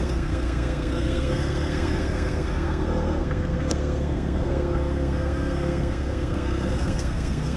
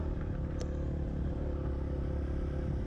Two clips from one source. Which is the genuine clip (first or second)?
second